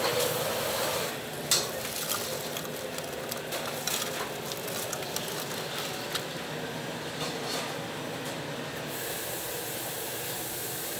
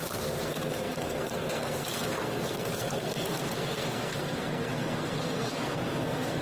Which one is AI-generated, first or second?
second